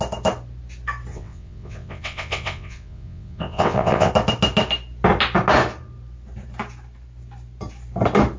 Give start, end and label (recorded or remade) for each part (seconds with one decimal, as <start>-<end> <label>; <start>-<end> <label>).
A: 0.0-1.1 recorded; 1.1-4.1 remade; 4.1-8.4 recorded